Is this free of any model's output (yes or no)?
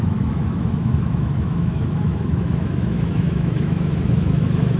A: no